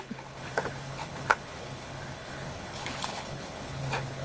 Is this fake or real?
fake